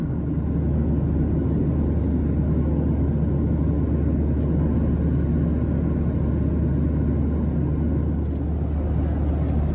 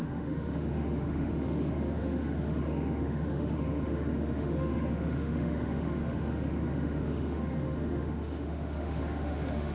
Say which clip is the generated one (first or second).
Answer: second